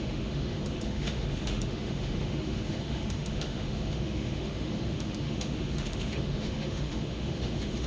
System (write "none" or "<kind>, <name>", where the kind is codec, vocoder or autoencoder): autoencoder, DAC-VAE